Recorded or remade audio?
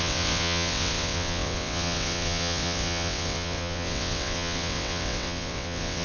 remade